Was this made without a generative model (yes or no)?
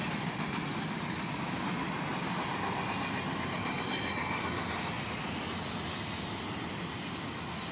yes